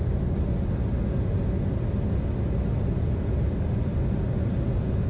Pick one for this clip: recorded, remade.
recorded